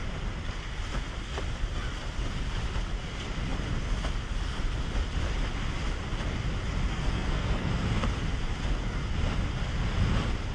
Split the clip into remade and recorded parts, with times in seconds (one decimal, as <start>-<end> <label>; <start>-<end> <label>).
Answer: 0.0-6.9 recorded; 6.9-7.7 remade; 7.7-10.5 recorded